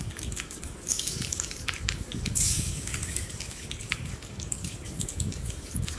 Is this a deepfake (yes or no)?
yes